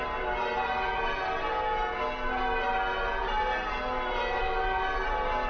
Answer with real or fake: real